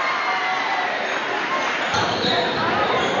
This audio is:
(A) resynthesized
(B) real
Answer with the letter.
B